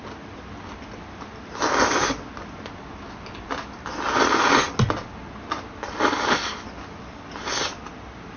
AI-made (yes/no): no